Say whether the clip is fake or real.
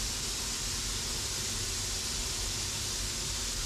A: real